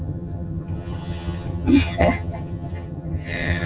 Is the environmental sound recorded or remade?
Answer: remade